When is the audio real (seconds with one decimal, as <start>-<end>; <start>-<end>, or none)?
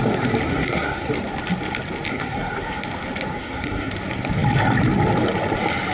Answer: 0.0-0.5; 1.1-2.1; 2.8-3.3; 3.9-5.9